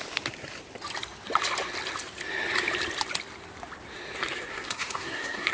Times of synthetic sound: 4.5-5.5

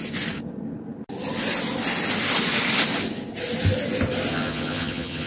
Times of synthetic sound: 4.3-5.3

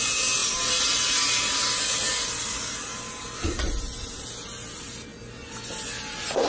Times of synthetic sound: 0.0-5.1; 6.0-6.5

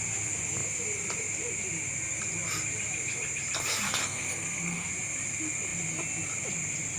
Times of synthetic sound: 4.0-4.9

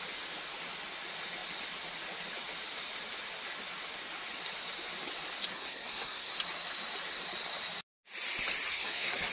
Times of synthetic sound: 5.5-6.3; 8.7-9.3

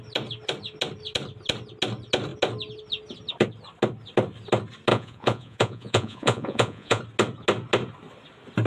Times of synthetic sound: 4.9-7.0